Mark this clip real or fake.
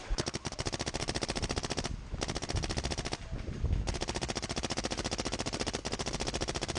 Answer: real